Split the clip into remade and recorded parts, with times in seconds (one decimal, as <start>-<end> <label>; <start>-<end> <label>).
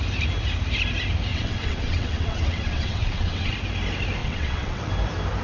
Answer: 0.0-1.3 recorded; 1.3-3.5 remade; 3.5-4.2 recorded; 4.2-4.9 remade; 4.9-5.4 recorded